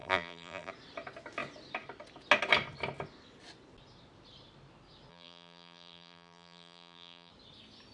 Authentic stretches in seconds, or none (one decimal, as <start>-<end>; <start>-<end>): 0.7-5.1; 7.3-7.9